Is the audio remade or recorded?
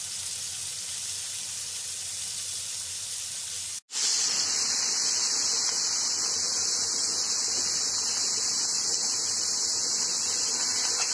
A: recorded